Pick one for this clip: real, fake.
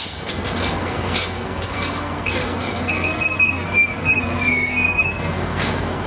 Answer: fake